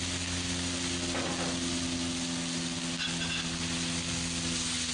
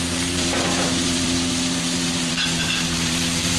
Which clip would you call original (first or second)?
first